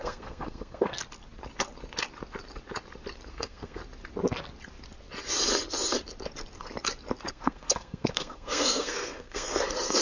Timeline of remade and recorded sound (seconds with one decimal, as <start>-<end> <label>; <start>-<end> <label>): 0.0-1.0 remade; 1.0-3.3 recorded; 3.3-3.8 remade; 3.8-7.3 recorded; 7.3-10.0 remade